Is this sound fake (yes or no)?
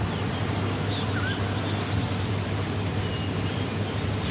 no